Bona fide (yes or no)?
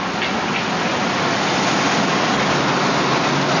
yes